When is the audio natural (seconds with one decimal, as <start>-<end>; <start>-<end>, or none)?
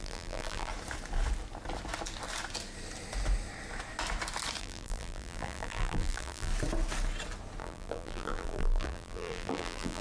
0.7-4.6; 6.5-7.6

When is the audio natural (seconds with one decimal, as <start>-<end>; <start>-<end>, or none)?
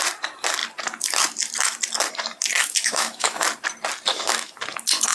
0.0-2.6; 3.4-4.1; 4.6-5.1